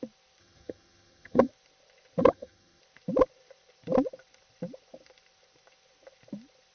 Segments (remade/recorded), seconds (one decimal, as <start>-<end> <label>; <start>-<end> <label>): 0.0-0.4 recorded; 0.4-1.5 remade; 1.5-2.2 recorded; 2.2-2.8 remade; 2.8-6.7 recorded